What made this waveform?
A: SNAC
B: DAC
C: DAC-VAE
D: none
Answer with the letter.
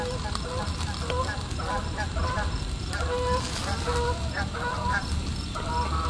D